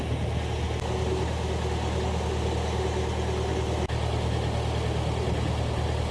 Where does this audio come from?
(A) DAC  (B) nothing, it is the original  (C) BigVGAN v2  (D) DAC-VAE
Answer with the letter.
B